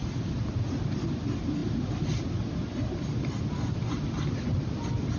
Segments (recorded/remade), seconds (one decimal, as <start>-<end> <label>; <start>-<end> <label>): 0.0-5.2 recorded